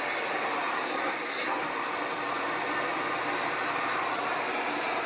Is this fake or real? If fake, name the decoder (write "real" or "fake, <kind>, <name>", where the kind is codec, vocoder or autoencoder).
fake, vocoder, BigVGAN v2